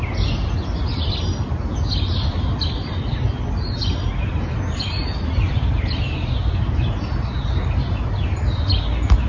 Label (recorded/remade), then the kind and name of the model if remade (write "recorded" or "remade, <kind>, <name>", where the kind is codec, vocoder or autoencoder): recorded